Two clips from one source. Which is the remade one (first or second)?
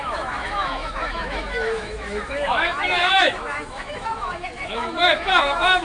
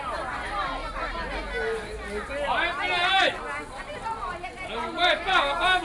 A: first